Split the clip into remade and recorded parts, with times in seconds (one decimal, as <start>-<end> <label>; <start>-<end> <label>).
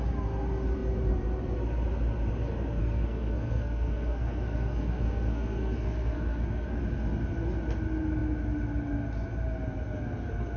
0.0-2.8 recorded; 2.8-6.8 remade; 6.8-10.6 recorded